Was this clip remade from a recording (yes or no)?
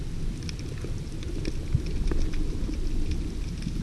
no